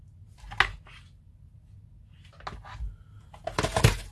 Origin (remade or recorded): recorded